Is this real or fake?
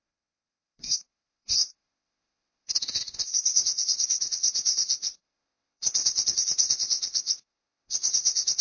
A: fake